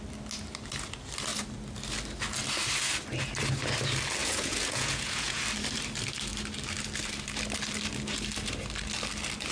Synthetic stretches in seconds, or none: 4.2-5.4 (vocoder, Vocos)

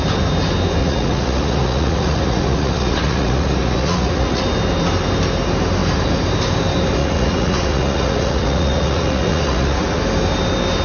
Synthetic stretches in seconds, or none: 0.8-4.4 (vocoder, Vocos); 7.0-10.0

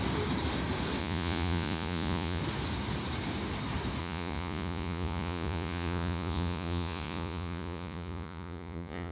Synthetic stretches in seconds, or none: 1.0-2.4 (vocoder, Vocos); 4.0-9.1

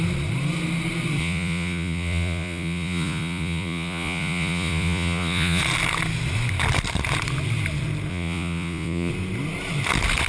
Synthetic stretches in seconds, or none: 1.2-5.6 (vocoder, Vocos); 8.1-9.1